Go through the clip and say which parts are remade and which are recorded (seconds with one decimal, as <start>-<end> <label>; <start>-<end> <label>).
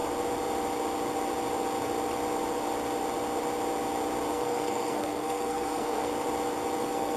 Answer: 0.0-4.3 recorded; 4.3-6.1 remade; 6.1-6.8 recorded; 6.8-7.2 remade